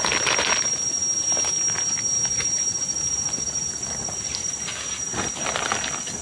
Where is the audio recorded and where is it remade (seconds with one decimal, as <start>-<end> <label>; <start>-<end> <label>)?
0.0-6.2 recorded